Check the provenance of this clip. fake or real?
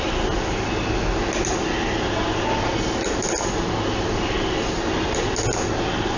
real